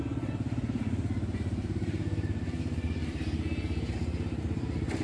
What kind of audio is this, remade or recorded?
recorded